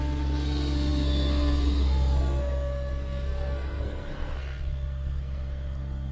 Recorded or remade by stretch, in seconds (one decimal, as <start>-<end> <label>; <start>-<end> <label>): 0.0-6.1 remade